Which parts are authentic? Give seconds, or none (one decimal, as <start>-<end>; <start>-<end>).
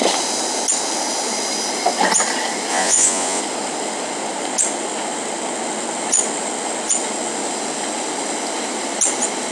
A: 0.0-2.7; 3.4-9.5